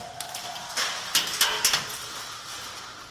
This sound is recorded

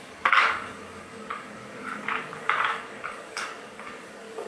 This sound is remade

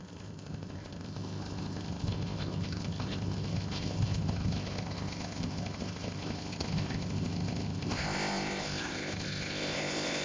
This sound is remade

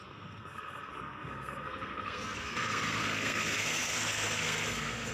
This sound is remade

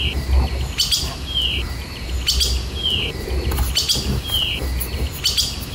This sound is recorded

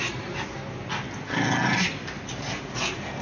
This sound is recorded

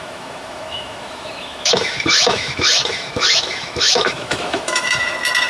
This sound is remade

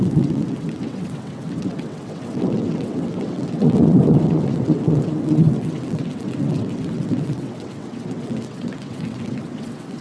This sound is remade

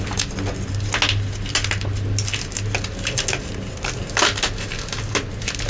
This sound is recorded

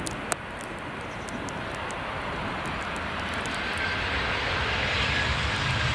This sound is recorded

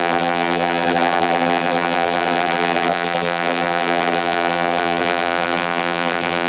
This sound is remade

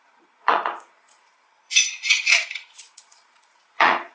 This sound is remade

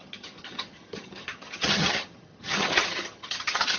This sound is remade